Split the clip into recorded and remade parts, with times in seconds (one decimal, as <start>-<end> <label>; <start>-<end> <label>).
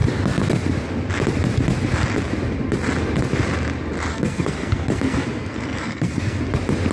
0.0-4.1 recorded; 4.1-6.4 remade; 6.4-6.9 recorded